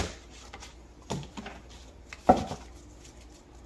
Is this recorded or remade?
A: recorded